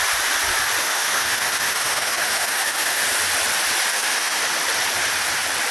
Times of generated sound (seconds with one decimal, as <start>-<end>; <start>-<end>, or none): 0.8-3.0; 3.9-4.4